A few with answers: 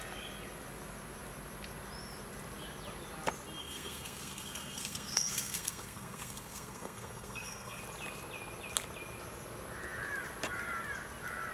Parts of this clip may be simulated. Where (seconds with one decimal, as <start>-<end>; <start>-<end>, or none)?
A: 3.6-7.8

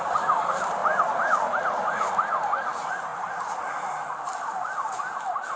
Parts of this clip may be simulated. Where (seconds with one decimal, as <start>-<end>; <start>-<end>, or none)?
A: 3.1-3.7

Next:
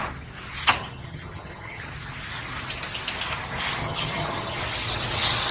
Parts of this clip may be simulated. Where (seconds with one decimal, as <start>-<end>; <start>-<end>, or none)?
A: 0.8-1.8; 3.8-4.6